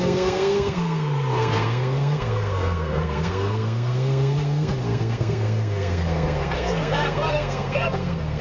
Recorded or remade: remade